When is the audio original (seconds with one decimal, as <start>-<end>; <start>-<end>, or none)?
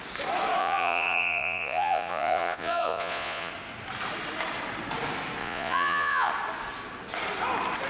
0.0-0.6; 3.5-5.4; 6.3-7.9